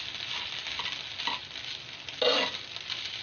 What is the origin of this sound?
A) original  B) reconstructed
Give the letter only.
A